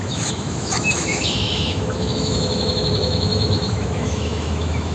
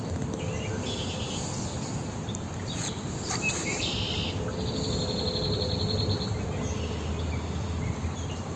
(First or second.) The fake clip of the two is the first